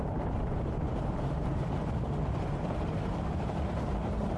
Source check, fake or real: fake